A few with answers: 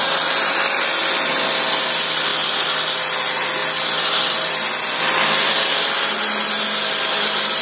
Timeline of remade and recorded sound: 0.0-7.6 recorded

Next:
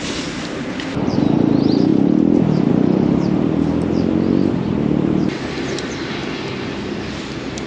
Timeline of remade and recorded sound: 0.0-7.7 recorded

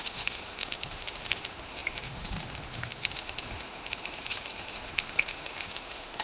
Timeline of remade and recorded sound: 0.0-6.2 remade

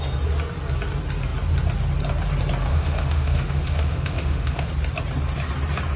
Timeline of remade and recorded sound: 0.0-2.7 recorded; 2.7-4.7 remade; 4.7-6.0 recorded

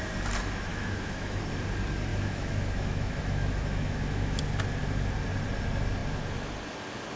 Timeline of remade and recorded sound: 0.0-0.7 recorded; 0.7-1.4 remade; 1.4-2.1 recorded; 2.1-4.4 remade; 4.4-7.2 recorded